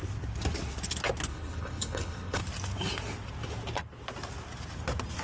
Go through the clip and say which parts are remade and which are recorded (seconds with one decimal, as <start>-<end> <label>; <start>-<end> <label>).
0.0-1.3 recorded; 1.3-2.4 remade; 2.4-5.2 recorded